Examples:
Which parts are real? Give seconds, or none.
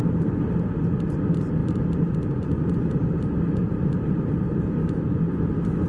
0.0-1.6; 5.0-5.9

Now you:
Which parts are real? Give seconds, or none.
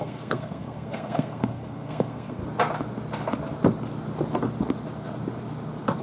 2.4-6.0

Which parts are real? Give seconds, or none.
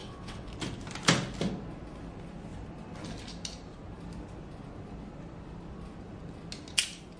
0.5-7.2